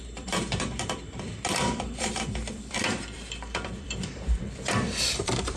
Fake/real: fake